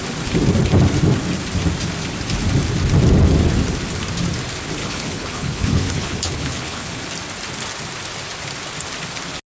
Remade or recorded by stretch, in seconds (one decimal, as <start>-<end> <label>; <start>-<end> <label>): 0.0-4.8 recorded; 4.8-7.0 remade; 7.0-9.5 recorded